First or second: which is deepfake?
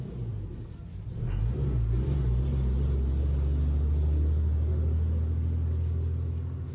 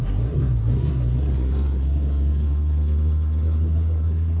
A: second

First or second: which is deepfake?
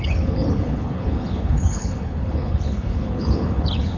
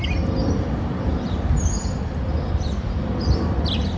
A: first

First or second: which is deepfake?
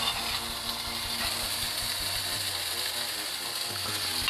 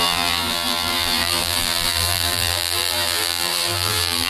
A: second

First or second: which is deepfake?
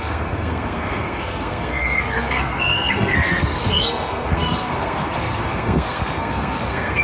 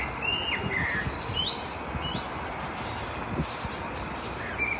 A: first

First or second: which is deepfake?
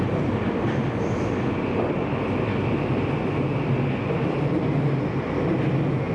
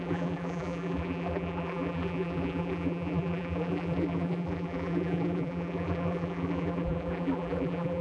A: second